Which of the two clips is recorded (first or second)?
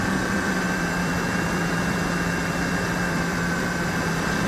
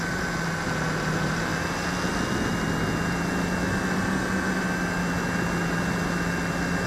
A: second